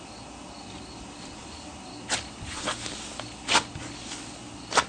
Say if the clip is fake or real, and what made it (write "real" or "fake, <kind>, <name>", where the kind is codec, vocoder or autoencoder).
real